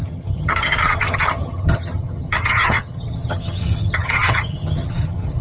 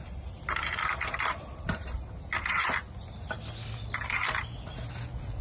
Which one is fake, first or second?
first